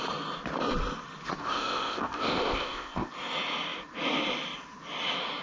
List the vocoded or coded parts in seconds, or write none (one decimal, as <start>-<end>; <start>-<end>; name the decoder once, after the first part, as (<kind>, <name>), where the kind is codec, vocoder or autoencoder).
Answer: 1.4-3.1 (codec, ZipCodec)